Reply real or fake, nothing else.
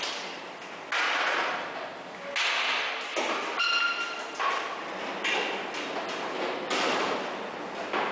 real